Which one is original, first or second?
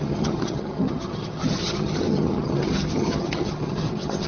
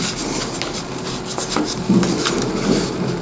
second